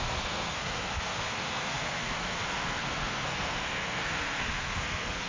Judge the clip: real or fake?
fake